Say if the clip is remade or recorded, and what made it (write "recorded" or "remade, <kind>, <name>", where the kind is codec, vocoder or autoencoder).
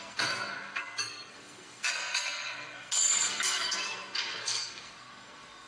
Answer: remade, codec, SNAC